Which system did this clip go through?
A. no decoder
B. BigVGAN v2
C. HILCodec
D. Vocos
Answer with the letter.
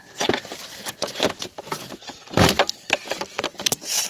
B